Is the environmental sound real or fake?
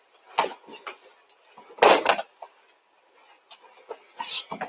real